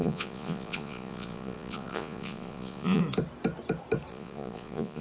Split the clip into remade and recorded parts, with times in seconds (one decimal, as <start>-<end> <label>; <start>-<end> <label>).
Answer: 0.0-3.0 remade; 3.0-4.1 recorded; 4.1-5.0 remade